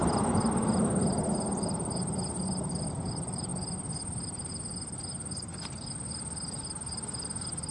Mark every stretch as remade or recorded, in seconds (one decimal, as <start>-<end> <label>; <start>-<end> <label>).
0.0-7.7 recorded